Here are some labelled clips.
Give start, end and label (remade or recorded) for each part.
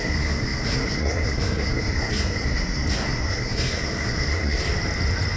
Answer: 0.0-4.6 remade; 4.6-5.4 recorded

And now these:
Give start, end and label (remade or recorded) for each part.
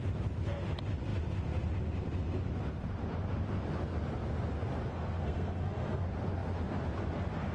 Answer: 0.0-4.9 recorded; 4.9-6.0 remade; 6.0-7.5 recorded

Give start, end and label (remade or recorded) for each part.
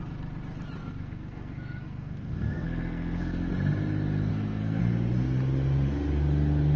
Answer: 0.0-0.8 recorded; 0.8-3.5 remade; 3.5-4.3 recorded; 4.3-4.8 remade; 4.8-6.8 recorded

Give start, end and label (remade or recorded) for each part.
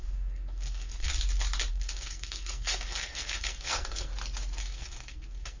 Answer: 0.0-1.1 remade; 1.1-1.7 recorded; 1.7-4.1 remade; 4.1-4.6 recorded; 4.6-5.6 remade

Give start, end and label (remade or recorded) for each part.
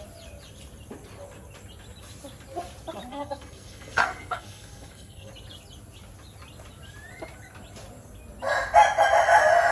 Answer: 0.0-3.1 recorded; 3.1-5.3 remade; 5.3-9.7 recorded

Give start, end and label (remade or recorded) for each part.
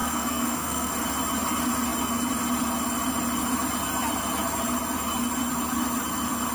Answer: 0.0-0.9 remade; 0.9-6.5 recorded